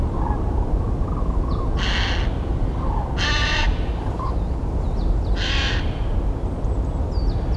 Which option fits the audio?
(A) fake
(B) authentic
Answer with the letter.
B